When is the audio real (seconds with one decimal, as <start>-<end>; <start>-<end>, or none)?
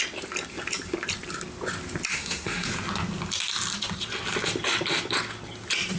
0.0-2.1; 2.7-6.0